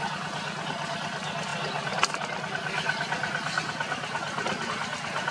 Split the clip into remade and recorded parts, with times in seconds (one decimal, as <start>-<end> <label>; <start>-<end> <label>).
0.0-5.3 recorded